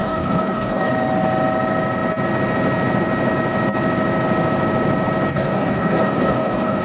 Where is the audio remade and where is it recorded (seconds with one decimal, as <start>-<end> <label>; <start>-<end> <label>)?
0.0-0.9 remade; 0.9-5.3 recorded; 5.3-6.8 remade